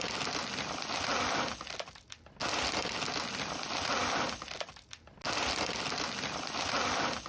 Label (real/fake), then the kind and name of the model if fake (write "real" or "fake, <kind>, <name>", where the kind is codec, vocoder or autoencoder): real